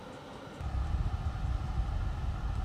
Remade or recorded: recorded